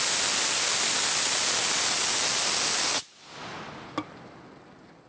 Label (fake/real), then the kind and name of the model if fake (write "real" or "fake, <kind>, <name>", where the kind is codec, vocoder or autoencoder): real